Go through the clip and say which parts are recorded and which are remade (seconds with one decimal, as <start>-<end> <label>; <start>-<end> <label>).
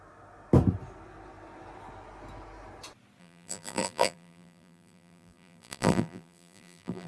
0.0-3.2 recorded; 3.2-7.1 remade